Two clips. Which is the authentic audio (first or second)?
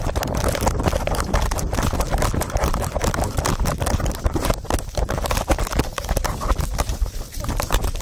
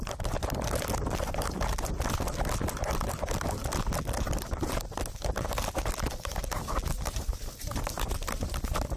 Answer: second